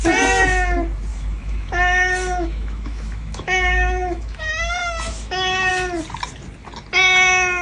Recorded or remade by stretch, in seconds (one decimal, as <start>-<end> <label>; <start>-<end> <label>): 0.0-1.1 recorded; 1.1-5.7 remade; 5.7-7.6 recorded